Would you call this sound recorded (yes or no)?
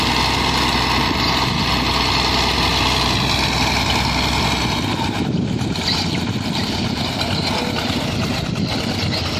yes